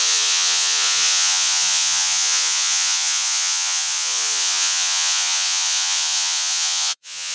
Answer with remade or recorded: remade